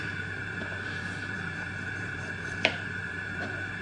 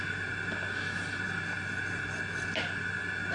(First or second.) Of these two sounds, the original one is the second